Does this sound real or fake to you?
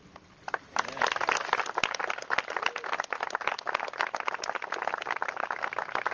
real